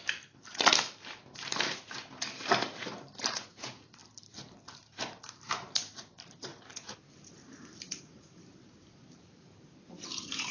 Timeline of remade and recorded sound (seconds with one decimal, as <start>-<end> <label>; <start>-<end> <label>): 0.0-4.0 remade; 4.0-4.6 recorded; 4.6-6.5 remade; 6.5-7.4 recorded; 7.4-10.5 remade